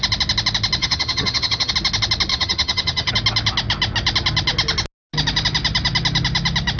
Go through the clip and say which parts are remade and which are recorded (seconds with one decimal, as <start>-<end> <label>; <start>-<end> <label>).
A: 0.0-0.8 recorded; 0.8-1.7 remade; 1.7-2.3 recorded; 2.3-3.1 remade; 3.1-6.8 recorded